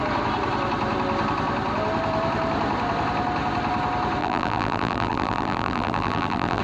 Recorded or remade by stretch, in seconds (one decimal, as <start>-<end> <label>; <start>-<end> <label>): 0.0-4.2 recorded; 4.2-6.6 remade

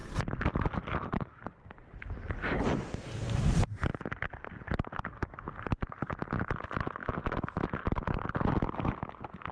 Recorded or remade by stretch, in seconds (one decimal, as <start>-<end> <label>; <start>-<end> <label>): 0.0-9.5 recorded

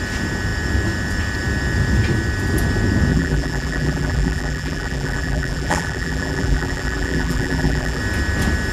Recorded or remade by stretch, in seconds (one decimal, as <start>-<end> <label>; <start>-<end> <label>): 0.0-3.1 recorded; 3.1-8.0 remade; 8.0-8.7 recorded

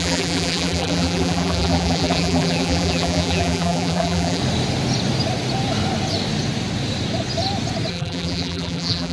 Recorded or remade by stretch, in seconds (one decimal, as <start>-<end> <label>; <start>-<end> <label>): 0.0-4.4 remade; 4.4-7.9 recorded; 7.9-9.1 remade

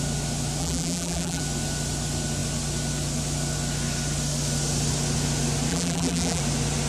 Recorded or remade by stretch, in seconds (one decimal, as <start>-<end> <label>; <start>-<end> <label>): 0.0-0.6 recorded; 0.6-1.4 remade; 1.4-5.7 recorded; 5.7-6.4 remade; 6.4-6.9 recorded

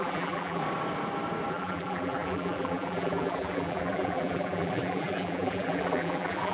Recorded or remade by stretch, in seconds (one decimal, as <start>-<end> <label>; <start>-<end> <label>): 0.0-0.6 remade; 0.6-1.5 recorded; 1.5-6.5 remade

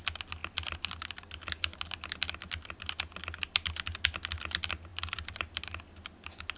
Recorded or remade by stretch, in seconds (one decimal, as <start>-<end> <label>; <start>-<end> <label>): 0.0-4.9 recorded; 4.9-6.6 remade